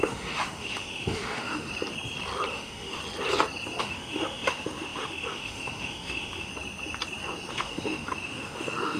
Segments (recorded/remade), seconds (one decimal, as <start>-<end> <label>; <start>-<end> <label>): 0.0-1.7 remade; 1.7-2.5 recorded; 2.5-3.0 remade; 3.0-3.8 recorded; 3.8-6.5 remade; 6.5-7.5 recorded; 7.5-9.0 remade